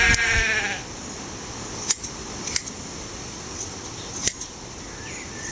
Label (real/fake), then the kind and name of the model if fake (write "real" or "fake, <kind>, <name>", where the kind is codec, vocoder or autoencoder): real